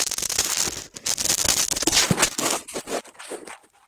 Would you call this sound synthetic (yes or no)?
no